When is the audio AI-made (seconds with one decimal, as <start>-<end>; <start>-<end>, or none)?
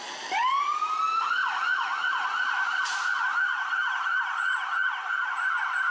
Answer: none